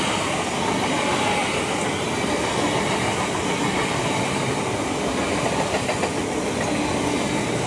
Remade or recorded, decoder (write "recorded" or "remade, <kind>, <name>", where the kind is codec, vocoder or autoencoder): recorded